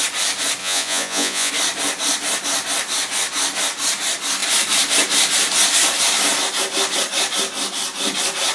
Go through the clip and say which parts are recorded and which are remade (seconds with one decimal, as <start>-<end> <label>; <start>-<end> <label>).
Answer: 0.0-0.6 recorded; 0.6-1.5 remade; 1.5-8.5 recorded